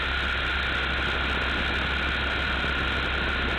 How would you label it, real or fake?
real